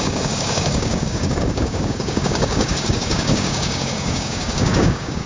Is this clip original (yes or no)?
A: no